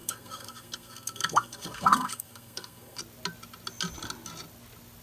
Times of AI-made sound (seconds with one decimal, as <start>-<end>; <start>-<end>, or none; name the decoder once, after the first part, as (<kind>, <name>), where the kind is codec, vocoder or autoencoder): 0.0-3.0 (codec, SNAC)